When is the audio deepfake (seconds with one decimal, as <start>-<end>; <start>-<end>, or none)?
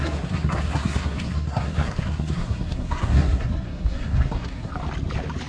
0.0-4.7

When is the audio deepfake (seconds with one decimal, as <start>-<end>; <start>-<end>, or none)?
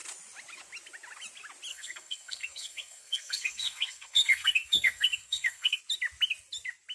1.7-5.8